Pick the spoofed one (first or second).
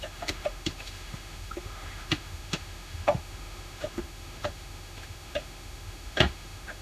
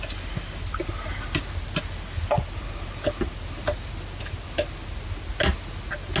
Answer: first